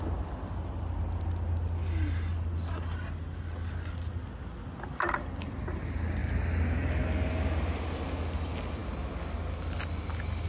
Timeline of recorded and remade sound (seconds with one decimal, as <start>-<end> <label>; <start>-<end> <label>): 0.0-10.5 recorded